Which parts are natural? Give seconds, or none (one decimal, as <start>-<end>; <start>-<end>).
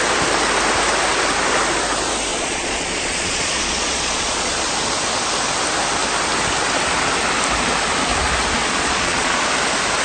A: 0.0-2.3; 4.7-8.6; 9.5-10.0